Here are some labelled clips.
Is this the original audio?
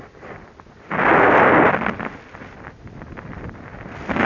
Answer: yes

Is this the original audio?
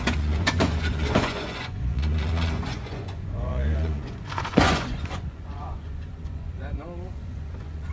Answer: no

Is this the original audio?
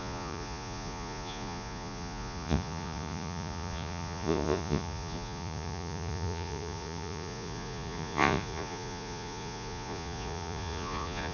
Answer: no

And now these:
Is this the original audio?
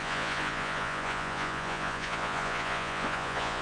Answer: no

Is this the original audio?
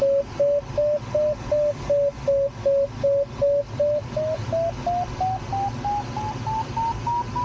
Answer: yes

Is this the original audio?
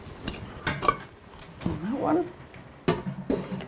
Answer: yes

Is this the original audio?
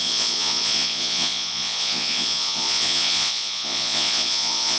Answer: no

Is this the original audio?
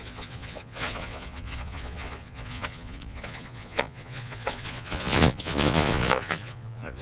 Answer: no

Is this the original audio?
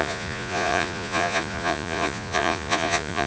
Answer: no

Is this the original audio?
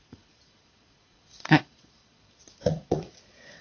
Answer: no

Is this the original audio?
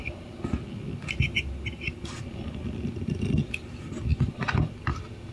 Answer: yes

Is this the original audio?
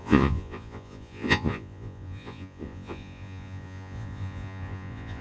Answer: no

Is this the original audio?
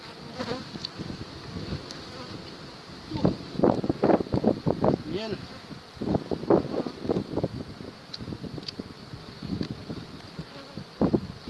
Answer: yes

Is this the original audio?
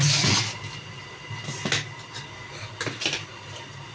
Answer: yes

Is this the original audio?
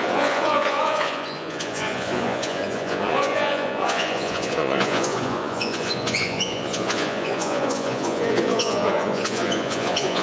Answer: no